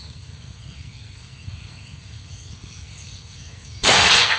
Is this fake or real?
fake